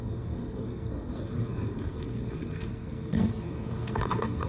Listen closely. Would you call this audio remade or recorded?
remade